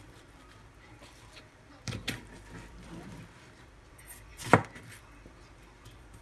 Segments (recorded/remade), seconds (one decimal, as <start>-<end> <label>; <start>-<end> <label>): 0.0-6.2 remade